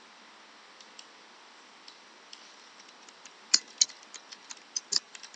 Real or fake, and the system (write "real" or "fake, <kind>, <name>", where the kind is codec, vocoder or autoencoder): real